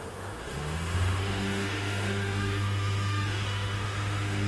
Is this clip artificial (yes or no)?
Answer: yes